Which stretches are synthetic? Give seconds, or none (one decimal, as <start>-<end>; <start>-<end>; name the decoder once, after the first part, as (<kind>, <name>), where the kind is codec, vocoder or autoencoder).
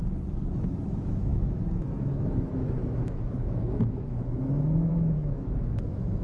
0.6-6.2 (autoencoder, DAC-VAE)